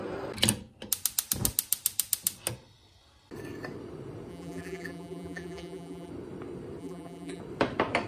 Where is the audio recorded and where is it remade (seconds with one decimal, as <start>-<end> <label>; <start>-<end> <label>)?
0.0-4.3 recorded; 4.3-6.1 remade; 6.1-6.8 recorded; 6.8-7.4 remade; 7.4-8.1 recorded